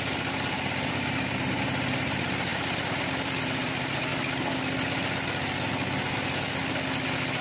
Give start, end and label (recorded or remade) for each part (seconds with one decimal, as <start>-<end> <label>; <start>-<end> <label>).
0.0-4.1 remade; 4.1-7.4 recorded